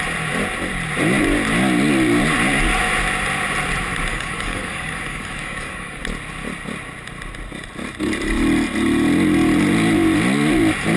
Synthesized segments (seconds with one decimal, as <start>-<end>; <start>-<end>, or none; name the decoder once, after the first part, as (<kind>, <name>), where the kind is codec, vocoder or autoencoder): 4.1-6.0 (codec, DAC)